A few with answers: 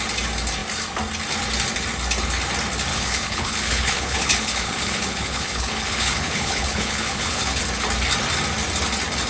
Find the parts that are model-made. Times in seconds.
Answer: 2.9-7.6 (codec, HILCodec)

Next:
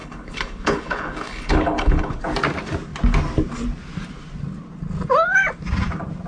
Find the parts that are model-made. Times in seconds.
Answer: 0.0-2.2 (codec, HILCodec)

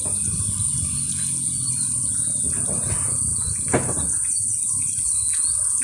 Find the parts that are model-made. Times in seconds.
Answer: none

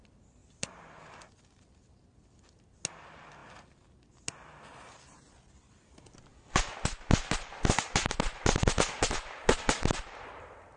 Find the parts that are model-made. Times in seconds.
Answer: none